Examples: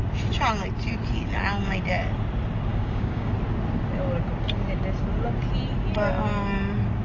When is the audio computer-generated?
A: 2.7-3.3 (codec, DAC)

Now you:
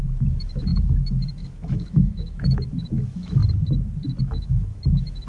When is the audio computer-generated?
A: 0.0-3.4 (autoencoder, DAC-VAE); 4.2-5.3

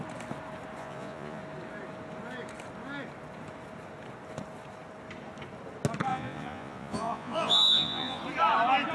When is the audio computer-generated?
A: 0.8-1.4 (vocoder, Vocos); 6.1-8.2